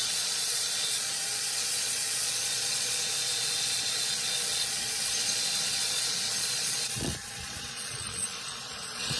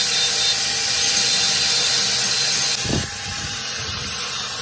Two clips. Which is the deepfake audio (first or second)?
first